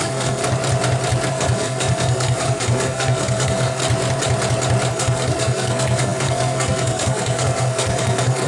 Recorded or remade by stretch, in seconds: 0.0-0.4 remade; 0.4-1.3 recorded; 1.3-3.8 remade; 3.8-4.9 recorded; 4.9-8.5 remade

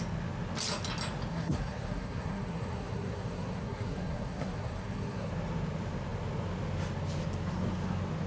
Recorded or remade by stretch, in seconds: 0.0-1.3 recorded; 1.3-5.3 remade; 5.3-8.3 recorded

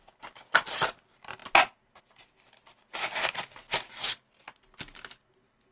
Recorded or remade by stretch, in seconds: 0.0-5.7 recorded

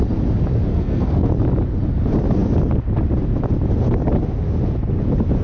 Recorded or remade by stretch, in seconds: 0.0-0.7 recorded; 0.7-1.3 remade; 1.3-5.4 recorded

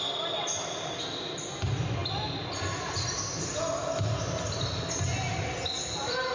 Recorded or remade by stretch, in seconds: 0.0-6.3 recorded

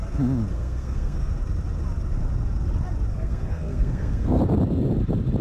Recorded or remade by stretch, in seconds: 0.0-0.5 recorded; 0.5-1.3 remade; 1.3-3.1 recorded; 3.1-4.4 remade; 4.4-5.4 recorded

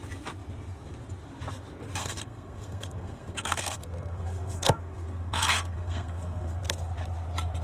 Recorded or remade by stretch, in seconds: 0.0-2.0 recorded; 2.0-6.6 remade; 6.6-7.6 recorded

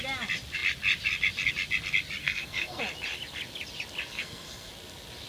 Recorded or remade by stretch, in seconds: 0.0-2.2 recorded; 2.2-2.8 remade; 2.8-4.1 recorded; 4.1-4.7 remade; 4.7-5.3 recorded